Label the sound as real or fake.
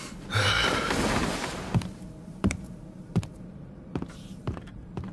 fake